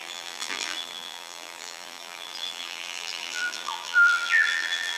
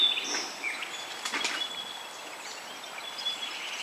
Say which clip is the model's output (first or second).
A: first